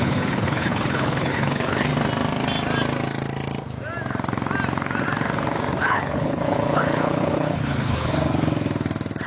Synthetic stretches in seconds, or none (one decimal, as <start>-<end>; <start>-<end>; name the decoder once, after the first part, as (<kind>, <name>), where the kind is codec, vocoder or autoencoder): 0.0-1.9 (codec, HILCodec); 5.8-8.1